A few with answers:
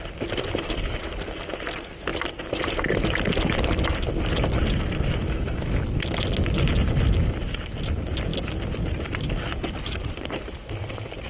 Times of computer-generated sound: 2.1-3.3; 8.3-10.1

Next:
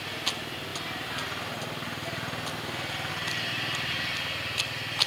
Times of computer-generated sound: none

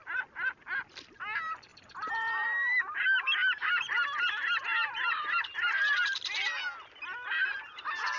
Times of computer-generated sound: 1.7-6.6

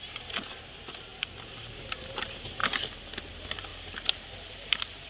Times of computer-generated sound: 0.0-1.1; 2.0-2.6; 3.3-5.1

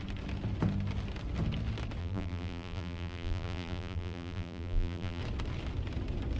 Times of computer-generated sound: 2.0-5.2